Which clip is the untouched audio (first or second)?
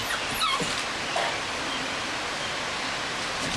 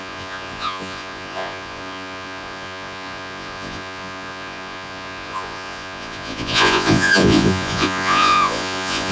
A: first